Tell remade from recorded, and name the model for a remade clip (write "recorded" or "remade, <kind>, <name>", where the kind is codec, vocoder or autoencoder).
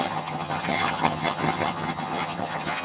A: remade, vocoder, HiFi-GAN